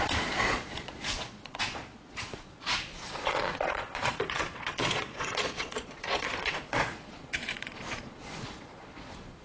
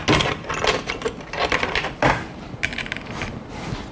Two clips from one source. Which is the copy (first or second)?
first